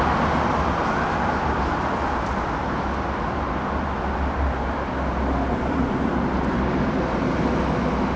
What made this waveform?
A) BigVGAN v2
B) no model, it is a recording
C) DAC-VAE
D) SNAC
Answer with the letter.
B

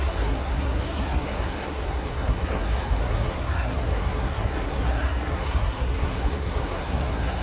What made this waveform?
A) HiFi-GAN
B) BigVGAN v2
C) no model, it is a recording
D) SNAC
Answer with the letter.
D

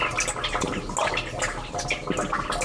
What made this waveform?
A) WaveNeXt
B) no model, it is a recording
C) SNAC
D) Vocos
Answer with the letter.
B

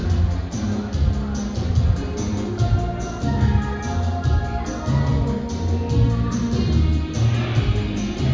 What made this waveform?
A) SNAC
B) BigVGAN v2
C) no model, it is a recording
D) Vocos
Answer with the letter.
C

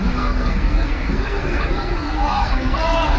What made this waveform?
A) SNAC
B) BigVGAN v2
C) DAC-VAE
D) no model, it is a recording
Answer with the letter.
A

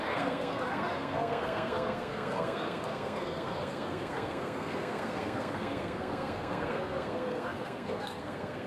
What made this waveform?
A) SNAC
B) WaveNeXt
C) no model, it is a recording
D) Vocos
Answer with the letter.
A